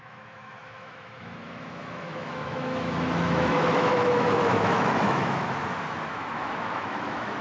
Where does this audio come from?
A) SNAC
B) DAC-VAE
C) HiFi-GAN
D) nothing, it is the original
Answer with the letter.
B